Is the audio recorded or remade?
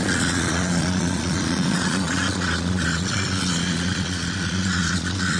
remade